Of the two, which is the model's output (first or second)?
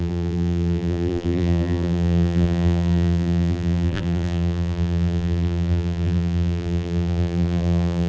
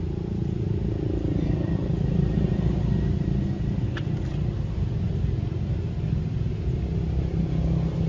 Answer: first